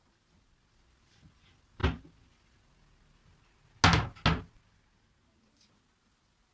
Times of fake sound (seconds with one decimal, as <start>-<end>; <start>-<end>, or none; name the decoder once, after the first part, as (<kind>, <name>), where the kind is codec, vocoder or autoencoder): none